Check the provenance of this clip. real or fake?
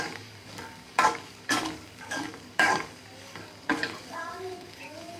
fake